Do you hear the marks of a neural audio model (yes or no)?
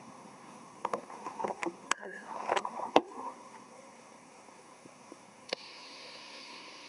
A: yes